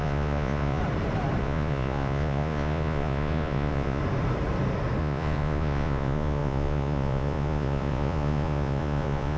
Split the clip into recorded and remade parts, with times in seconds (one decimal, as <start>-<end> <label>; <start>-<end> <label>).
0.0-0.8 remade; 0.8-1.4 recorded; 1.4-4.0 remade; 4.0-5.0 recorded; 5.0-9.4 remade